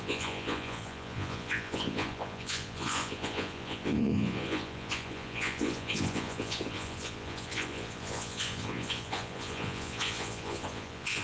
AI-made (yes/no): yes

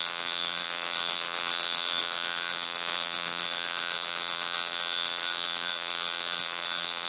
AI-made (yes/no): yes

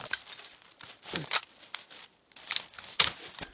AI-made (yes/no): no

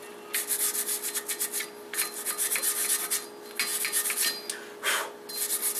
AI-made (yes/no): no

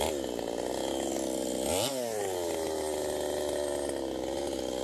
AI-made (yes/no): no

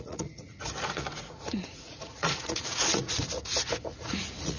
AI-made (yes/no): yes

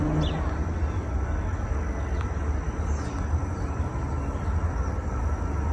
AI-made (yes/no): no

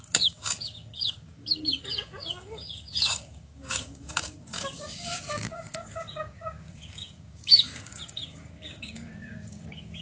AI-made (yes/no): yes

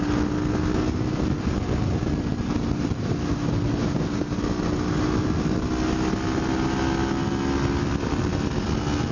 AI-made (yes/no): no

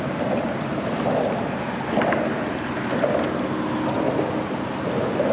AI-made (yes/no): no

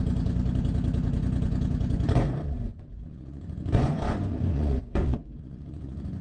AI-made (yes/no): yes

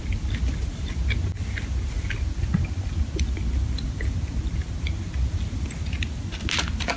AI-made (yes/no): no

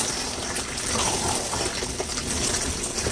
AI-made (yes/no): no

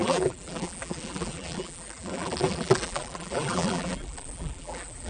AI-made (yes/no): yes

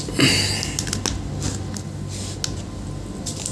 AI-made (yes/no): no